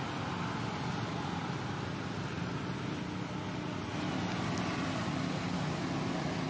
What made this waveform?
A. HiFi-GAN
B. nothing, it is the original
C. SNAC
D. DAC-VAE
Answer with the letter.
B